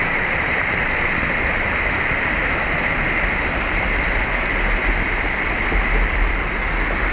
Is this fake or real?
real